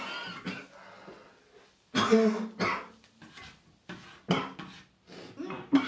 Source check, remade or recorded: recorded